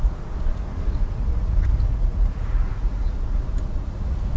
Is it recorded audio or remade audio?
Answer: remade